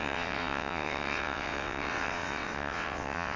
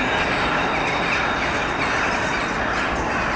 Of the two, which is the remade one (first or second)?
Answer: first